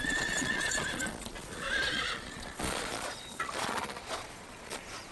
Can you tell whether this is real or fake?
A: fake